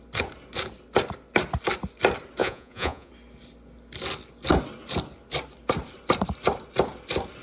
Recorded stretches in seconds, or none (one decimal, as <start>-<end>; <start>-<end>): 0.0-2.4; 3.1-7.4

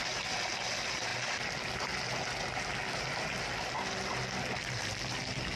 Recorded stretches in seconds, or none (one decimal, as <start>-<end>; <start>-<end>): 0.0-5.6

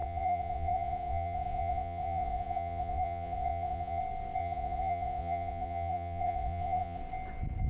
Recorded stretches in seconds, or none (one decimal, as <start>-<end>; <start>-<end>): 4.0-4.4; 7.0-7.7

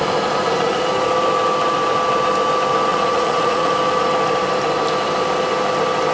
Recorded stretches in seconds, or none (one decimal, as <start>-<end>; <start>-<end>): 0.0-2.9; 3.7-6.1

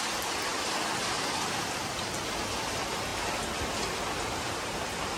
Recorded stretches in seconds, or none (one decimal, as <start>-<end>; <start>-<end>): 0.0-5.2